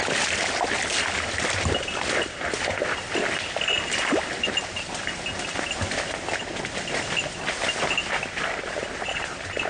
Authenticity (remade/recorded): recorded